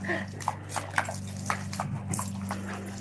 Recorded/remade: recorded